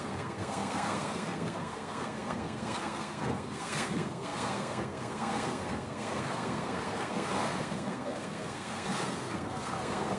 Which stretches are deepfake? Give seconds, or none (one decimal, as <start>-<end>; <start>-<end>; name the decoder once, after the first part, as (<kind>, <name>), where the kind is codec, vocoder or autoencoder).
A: 0.0-10.2 (codec, SNAC)

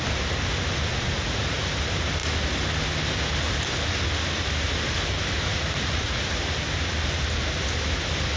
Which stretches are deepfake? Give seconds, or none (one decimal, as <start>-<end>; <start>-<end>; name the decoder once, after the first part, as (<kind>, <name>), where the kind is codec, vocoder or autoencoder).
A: 0.9-1.6 (vocoder, Vocos); 5.5-6.2

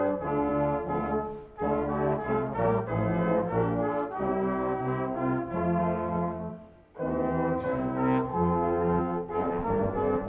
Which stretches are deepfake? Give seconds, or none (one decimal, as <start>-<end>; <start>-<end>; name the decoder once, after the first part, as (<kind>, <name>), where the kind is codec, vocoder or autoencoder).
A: 5.8-6.5 (codec, SNAC); 8.3-9.0

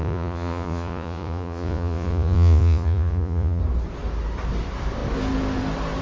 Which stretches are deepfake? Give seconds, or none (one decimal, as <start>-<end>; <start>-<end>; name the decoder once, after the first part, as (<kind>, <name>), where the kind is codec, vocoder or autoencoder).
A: 0.0-3.6 (vocoder, Vocos)

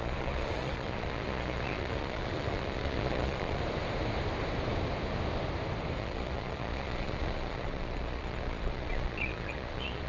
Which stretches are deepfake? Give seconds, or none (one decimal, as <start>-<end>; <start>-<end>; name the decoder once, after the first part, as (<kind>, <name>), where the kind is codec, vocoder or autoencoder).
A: 0.0-3.6 (vocoder, Vocos); 6.0-10.1

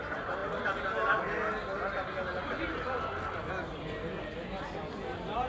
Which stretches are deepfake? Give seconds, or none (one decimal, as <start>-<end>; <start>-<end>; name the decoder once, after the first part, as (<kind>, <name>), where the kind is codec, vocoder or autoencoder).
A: none

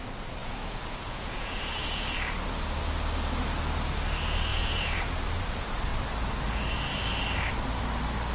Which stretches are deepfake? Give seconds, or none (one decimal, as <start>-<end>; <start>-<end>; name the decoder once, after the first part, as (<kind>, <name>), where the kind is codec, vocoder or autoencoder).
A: 0.4-1.8 (vocoder, Vocos); 4.5-5.0

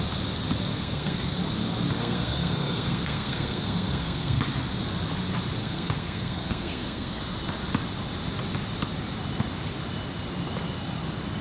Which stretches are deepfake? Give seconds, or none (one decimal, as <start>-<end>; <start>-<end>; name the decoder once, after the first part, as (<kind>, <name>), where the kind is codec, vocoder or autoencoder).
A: 0.7-1.4 (codec, SNAC); 2.0-4.4; 5.6-7.2